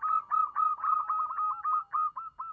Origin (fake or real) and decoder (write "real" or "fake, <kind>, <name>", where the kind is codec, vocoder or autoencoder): real